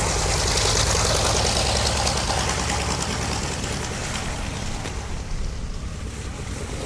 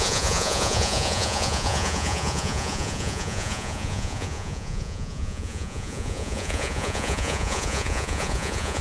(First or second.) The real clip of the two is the first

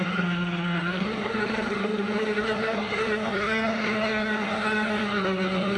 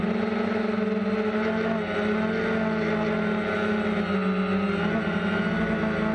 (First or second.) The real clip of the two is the second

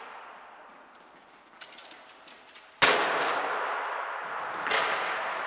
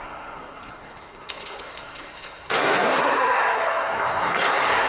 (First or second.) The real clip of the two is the first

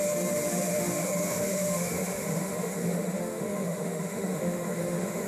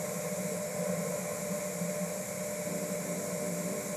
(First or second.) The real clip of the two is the second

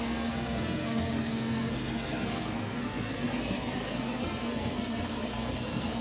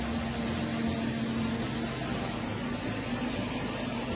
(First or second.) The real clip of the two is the second